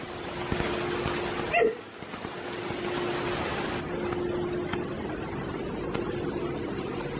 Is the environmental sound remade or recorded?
recorded